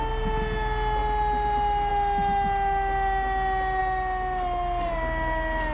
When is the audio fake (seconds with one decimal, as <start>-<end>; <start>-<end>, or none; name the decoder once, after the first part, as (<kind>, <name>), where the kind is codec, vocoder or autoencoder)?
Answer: none